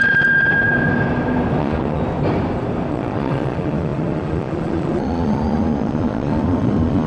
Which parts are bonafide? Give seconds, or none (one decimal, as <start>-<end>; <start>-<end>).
0.0-1.6; 2.0-2.9